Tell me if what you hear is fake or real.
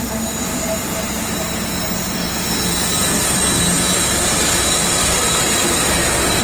real